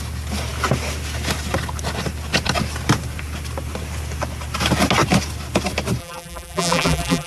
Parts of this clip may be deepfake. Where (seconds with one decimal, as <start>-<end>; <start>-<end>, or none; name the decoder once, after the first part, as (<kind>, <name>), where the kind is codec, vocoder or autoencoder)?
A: 6.0-7.3 (vocoder, BigVGAN v2)